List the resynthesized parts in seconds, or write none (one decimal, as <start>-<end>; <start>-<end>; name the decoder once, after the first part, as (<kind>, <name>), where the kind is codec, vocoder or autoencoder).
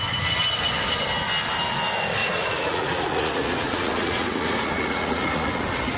2.2-6.0 (vocoder, Vocos)